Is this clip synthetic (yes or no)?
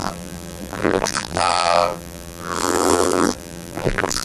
yes